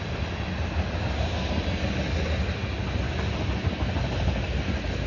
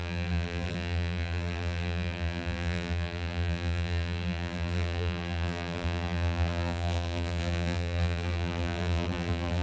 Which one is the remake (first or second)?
second